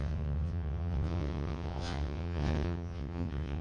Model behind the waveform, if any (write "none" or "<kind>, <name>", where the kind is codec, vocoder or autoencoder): vocoder, WaveNeXt